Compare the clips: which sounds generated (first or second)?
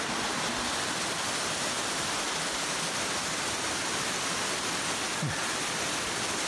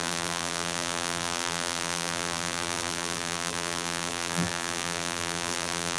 second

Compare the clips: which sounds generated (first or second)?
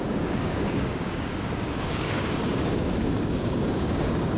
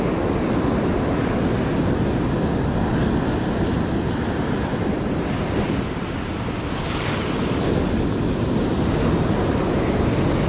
first